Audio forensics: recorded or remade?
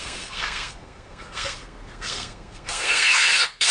remade